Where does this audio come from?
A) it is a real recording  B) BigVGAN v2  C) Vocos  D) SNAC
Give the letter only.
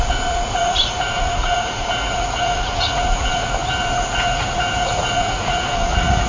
C